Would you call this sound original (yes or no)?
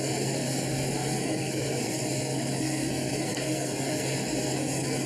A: no